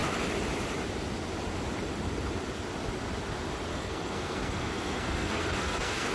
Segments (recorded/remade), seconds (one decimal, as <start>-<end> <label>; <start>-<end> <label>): 0.0-3.7 recorded; 3.7-6.1 remade